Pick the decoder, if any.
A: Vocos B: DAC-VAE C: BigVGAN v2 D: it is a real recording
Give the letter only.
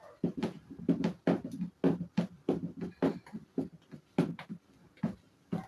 D